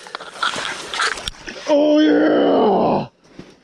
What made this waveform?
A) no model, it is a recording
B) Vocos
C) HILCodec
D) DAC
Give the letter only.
A